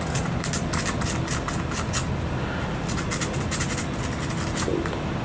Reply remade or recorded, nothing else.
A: recorded